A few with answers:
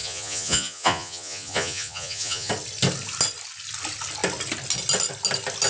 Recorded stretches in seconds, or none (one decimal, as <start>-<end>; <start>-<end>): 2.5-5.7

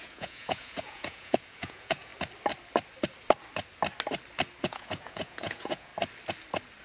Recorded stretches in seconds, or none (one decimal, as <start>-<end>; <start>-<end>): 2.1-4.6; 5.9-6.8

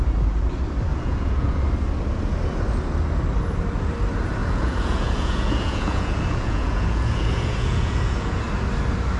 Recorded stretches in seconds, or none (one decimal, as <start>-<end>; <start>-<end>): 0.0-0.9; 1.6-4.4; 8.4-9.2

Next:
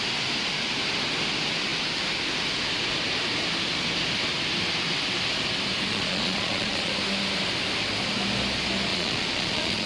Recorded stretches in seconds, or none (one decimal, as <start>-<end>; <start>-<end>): 0.0-5.9; 6.9-8.9

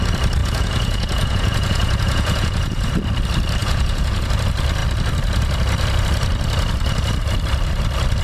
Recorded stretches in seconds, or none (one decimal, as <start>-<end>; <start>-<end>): 0.0-0.4; 2.9-3.6; 4.3-8.2